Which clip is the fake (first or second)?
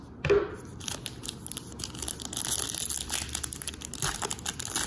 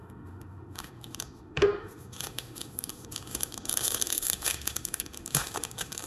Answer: second